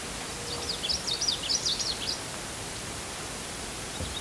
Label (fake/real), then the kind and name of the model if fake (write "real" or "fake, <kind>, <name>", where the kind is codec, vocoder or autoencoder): real